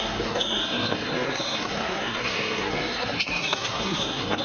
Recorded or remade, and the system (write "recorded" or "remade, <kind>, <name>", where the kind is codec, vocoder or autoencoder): remade, codec, SNAC